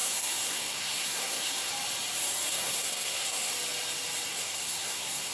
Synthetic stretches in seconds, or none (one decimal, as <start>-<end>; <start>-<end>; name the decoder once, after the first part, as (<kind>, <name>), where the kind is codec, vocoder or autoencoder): 0.0-1.7 (codec, SNAC); 2.5-3.5; 4.3-5.3